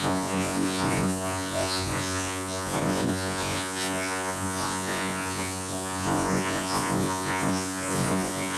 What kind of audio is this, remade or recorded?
remade